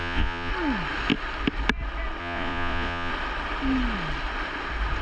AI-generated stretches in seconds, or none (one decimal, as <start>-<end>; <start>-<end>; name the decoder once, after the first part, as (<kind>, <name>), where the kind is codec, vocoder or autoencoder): 0.0-0.5 (vocoder, Vocos); 2.2-3.1